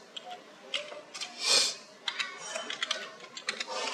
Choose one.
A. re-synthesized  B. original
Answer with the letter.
B